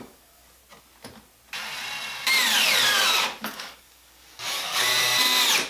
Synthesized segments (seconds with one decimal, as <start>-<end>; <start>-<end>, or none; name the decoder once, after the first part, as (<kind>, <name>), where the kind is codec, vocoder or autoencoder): 0.0-0.6 (codec, DAC); 3.4-4.9